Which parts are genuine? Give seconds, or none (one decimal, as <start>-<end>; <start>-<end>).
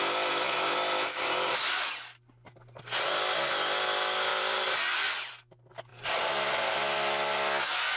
0.0-4.3; 5.3-5.9; 6.7-8.0